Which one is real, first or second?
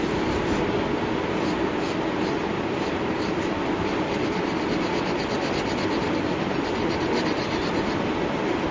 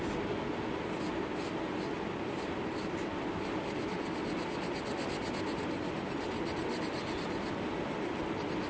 second